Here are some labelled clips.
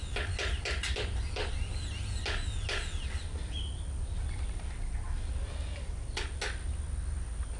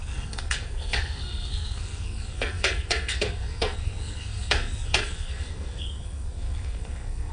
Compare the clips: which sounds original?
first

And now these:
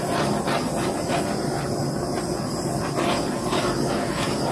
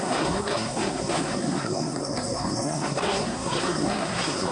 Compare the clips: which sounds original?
first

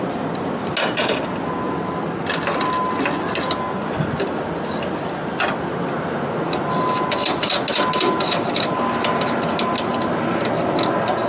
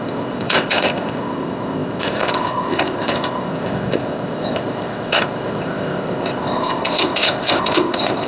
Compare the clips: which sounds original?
first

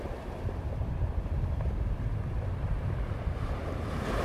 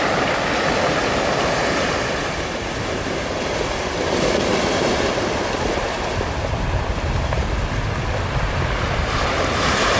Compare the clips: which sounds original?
second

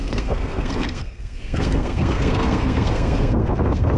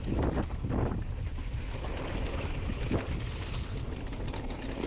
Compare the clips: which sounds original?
second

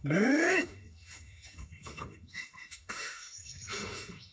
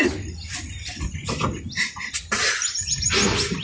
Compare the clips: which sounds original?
second